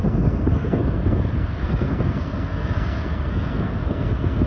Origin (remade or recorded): remade